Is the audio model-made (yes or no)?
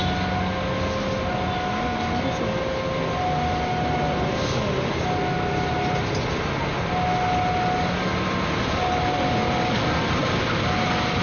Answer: no